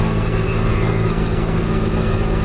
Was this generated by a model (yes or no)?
yes